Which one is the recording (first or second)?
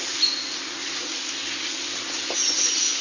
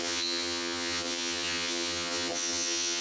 first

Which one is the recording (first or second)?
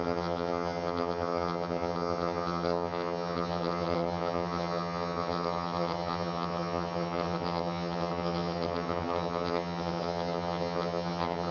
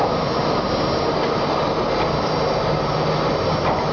second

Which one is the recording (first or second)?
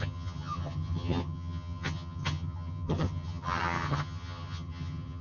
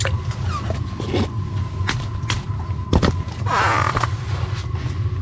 second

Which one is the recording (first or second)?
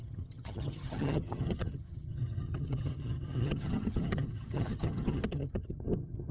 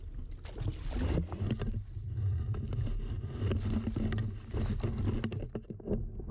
second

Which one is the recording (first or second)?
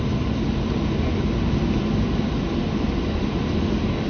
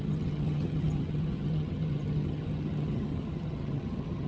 first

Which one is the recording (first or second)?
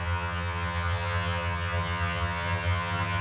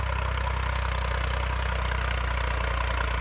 second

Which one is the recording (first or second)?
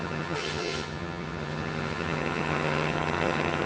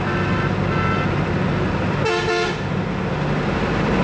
second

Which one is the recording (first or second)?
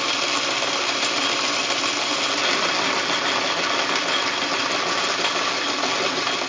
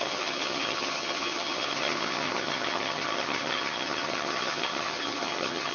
first